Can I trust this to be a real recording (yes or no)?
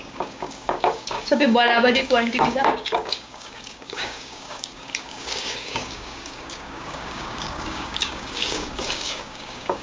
no